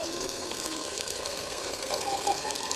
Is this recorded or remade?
remade